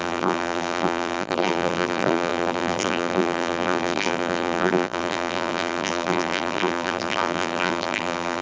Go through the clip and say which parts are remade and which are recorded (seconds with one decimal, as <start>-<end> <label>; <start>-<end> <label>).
0.0-8.4 remade